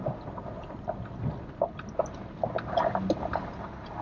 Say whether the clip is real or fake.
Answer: real